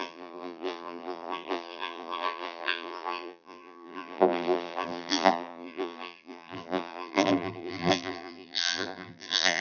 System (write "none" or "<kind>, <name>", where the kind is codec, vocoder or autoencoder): vocoder, BigVGAN v2